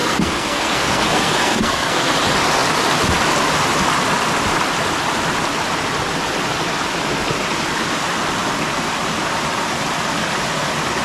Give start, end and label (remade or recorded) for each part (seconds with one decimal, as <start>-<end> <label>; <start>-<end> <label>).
0.0-2.1 remade; 2.1-11.0 recorded